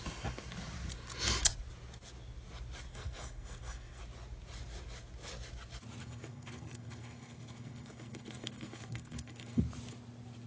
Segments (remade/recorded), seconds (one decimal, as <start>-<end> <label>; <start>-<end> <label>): 0.0-2.9 recorded; 2.9-4.0 remade; 4.0-6.0 recorded; 6.0-9.6 remade; 9.6-10.5 recorded